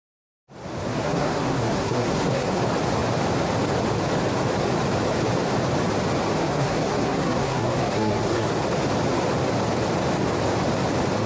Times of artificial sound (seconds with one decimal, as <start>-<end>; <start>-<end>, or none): 0.9-2.6; 6.4-8.5